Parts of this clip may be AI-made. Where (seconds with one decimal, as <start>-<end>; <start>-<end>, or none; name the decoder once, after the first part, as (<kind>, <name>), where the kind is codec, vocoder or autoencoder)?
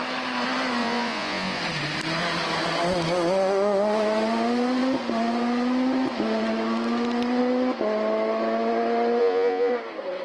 0.8-1.6 (vocoder, Vocos); 9.2-9.7